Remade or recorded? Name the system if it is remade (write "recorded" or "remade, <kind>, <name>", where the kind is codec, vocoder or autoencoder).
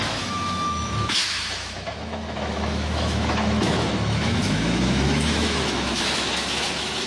remade, autoencoder, DAC-VAE